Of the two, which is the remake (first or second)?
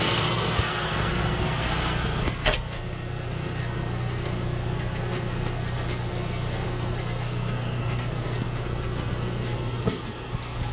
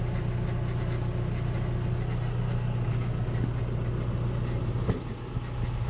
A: first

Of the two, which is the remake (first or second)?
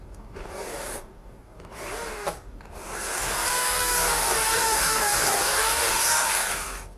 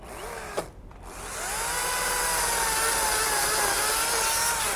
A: first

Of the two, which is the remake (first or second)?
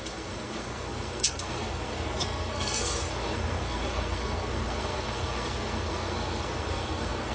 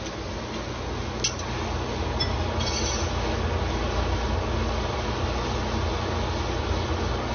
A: first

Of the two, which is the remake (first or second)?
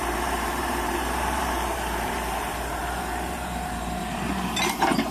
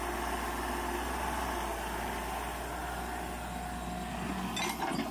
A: first